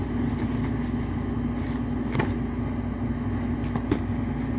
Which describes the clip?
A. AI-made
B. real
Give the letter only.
B